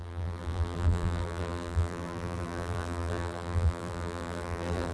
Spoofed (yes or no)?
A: yes